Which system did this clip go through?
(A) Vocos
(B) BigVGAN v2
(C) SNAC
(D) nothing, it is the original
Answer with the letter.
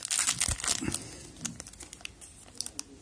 D